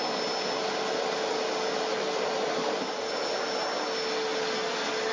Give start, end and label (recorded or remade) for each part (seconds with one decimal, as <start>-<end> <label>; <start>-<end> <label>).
0.0-5.1 recorded